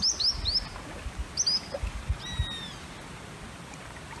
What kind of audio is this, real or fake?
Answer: real